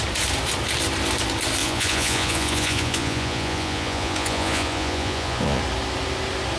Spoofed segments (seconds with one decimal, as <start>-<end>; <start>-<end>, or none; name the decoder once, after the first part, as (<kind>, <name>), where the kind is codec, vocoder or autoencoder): 1.6-5.6 (vocoder, Vocos)